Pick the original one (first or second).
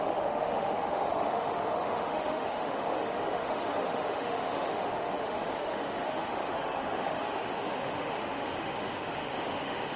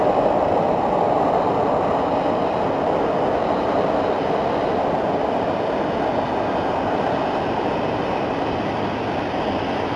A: second